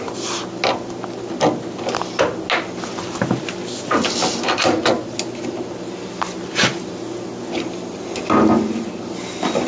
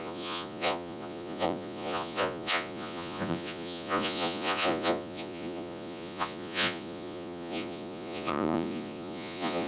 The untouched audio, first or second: first